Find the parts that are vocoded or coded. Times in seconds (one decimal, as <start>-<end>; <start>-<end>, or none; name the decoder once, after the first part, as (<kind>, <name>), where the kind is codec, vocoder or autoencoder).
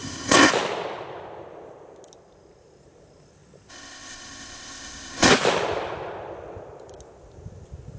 0.0-0.5 (codec, ZipCodec); 3.7-5.3